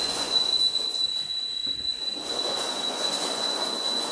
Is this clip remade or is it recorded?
remade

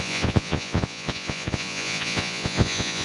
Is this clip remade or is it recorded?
remade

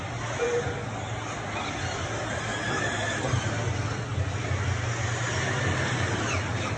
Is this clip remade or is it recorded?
recorded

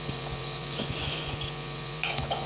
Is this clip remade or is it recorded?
remade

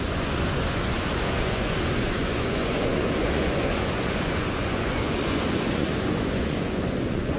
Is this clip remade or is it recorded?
remade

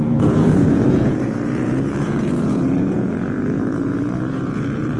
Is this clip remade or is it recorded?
remade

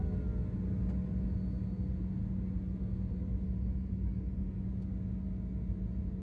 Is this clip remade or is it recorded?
recorded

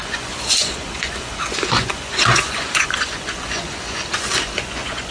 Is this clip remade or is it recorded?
remade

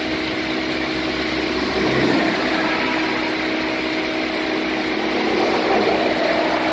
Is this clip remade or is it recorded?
recorded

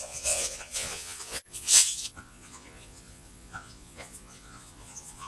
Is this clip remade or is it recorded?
remade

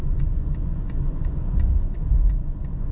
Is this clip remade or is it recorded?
remade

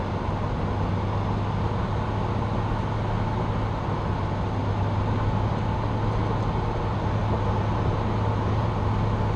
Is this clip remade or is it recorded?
recorded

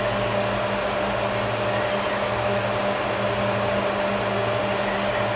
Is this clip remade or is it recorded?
recorded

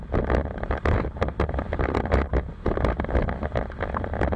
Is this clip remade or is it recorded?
recorded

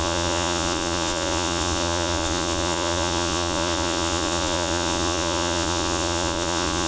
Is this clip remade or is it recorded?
remade